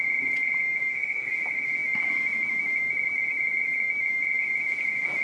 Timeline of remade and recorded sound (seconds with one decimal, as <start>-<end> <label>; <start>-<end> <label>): 0.0-0.8 recorded; 0.8-1.3 remade; 1.3-5.2 recorded